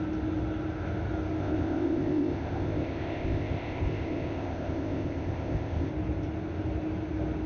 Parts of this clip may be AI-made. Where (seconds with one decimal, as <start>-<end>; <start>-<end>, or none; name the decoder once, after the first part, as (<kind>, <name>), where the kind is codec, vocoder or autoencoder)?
1.4-5.9 (codec, ZipCodec)